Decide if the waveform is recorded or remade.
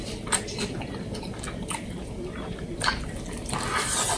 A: recorded